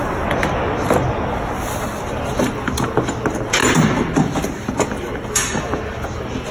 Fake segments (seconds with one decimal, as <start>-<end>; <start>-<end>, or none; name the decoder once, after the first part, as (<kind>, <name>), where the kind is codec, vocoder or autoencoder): none